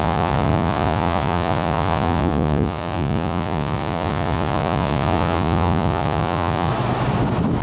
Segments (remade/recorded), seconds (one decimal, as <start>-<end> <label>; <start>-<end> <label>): 0.0-6.7 remade; 6.7-7.6 recorded